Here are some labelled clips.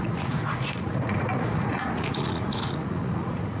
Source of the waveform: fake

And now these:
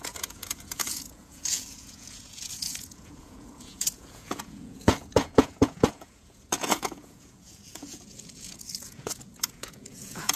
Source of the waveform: fake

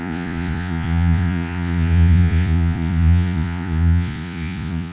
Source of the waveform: fake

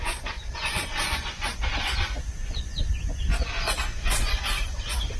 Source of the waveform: fake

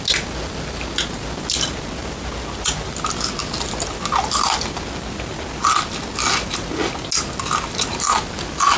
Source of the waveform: real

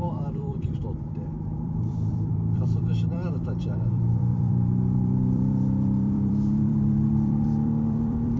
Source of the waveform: fake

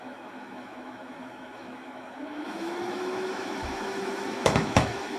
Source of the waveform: fake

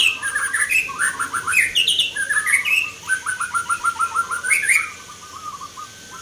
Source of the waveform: real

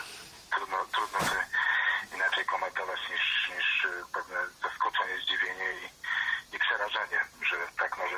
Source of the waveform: fake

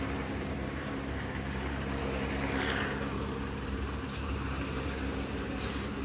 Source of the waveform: fake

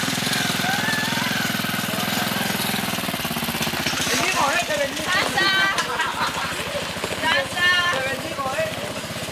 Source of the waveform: real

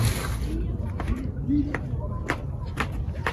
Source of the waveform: real